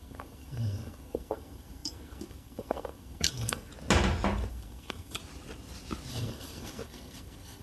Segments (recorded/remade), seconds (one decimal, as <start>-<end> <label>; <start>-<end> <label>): 0.0-3.7 remade; 3.7-4.5 recorded; 4.5-5.2 remade; 5.2-6.1 recorded; 6.1-7.6 remade